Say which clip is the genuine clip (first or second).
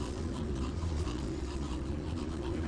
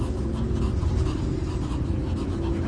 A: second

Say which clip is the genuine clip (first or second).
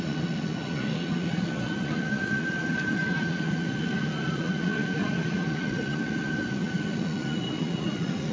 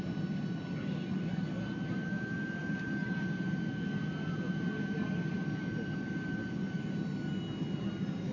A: second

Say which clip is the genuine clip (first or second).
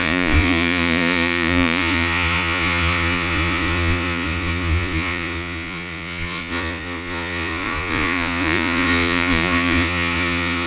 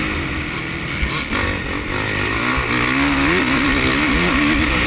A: second